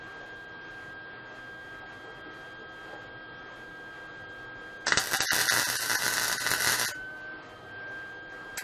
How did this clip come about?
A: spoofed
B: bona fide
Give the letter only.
B